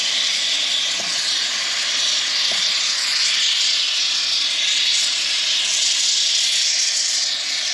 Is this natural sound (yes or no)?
yes